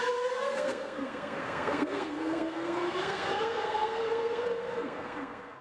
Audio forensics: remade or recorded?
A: remade